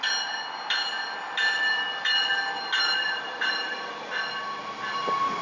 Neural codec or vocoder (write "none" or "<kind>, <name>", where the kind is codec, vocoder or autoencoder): none